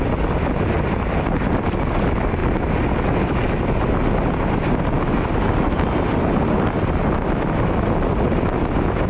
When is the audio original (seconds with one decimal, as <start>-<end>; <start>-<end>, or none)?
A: 0.0-9.1

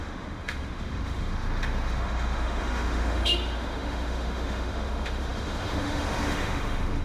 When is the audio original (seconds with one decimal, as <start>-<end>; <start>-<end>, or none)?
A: none

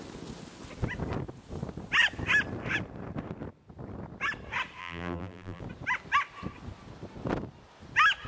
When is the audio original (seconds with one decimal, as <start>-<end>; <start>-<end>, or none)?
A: 0.0-4.8; 5.6-8.3